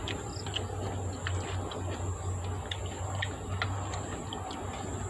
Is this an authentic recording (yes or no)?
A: yes